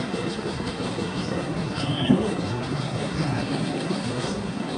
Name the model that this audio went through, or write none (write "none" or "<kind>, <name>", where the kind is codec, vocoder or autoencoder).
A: codec, SNAC